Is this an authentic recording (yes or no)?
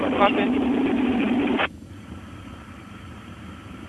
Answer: no